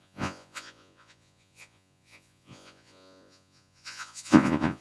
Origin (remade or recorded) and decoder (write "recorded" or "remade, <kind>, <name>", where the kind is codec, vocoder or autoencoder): remade, vocoder, Vocos